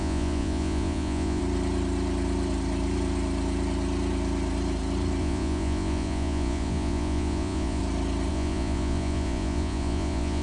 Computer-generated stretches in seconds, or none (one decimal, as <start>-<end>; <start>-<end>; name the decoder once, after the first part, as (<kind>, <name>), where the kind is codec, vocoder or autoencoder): 0.0-1.4 (vocoder, Vocos); 5.2-7.8; 8.3-10.4